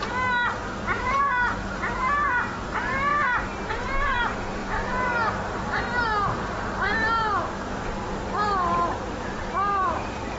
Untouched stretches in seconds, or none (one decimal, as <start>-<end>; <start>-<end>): 0.0-10.4